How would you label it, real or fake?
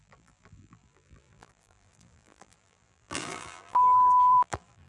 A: fake